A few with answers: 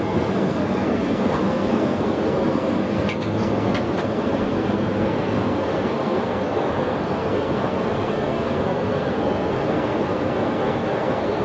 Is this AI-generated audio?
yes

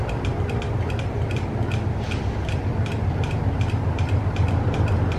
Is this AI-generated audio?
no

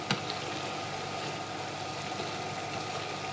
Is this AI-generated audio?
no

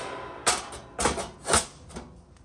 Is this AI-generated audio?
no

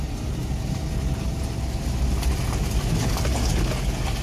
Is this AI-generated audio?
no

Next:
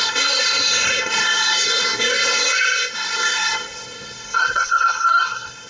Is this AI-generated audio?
yes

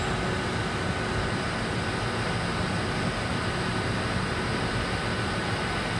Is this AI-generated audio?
no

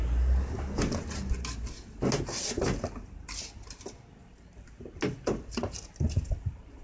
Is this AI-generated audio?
no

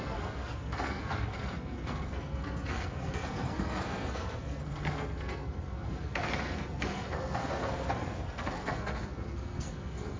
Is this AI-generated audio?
yes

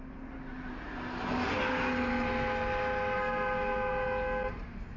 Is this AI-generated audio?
no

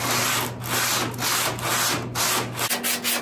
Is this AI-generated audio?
no